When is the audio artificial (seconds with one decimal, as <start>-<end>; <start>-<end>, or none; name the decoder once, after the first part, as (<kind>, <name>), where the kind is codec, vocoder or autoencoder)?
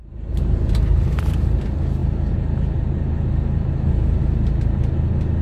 none